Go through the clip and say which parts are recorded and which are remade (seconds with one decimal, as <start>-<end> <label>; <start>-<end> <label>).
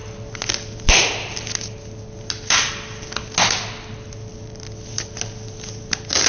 0.0-6.3 recorded